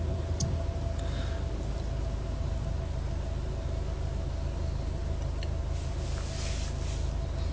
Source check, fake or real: real